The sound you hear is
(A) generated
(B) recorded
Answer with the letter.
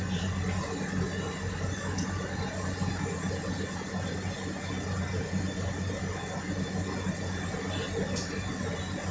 B